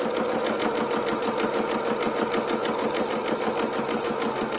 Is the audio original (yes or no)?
yes